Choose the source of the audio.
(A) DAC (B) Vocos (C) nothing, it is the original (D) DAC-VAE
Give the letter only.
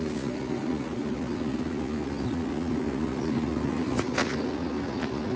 B